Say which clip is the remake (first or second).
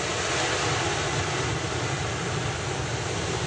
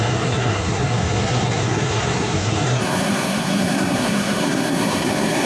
second